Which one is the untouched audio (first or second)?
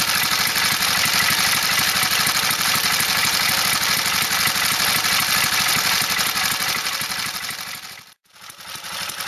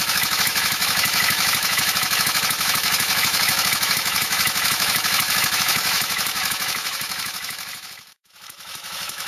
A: first